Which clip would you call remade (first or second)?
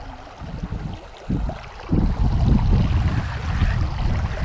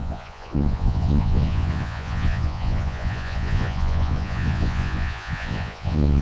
second